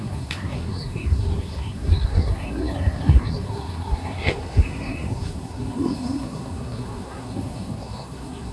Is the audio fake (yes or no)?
yes